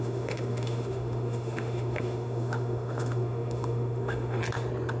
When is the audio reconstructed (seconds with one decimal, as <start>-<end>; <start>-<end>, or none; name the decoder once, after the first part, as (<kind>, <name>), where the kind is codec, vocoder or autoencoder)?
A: 0.0-4.4 (autoencoder, DAC-VAE)